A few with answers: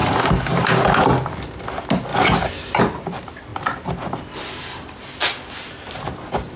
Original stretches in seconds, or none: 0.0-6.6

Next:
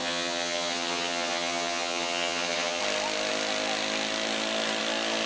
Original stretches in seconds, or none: 2.8-5.3

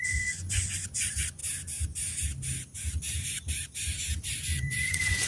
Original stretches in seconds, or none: 1.4-4.4